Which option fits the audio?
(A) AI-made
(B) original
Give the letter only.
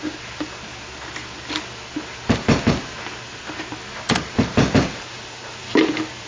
B